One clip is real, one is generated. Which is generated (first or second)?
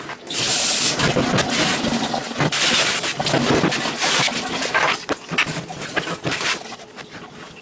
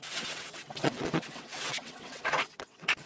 second